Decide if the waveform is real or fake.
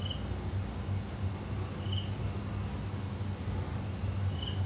real